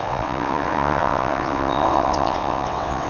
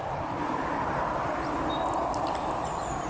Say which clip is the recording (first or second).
second